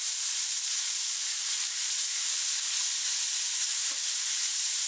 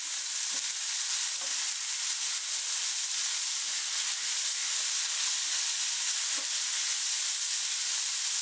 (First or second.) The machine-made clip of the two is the first